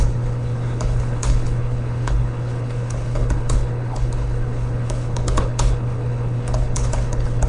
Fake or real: fake